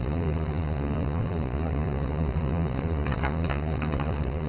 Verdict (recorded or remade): remade